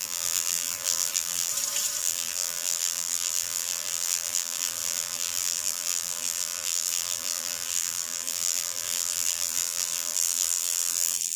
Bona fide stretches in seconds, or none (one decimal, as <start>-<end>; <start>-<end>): 1.5-2.0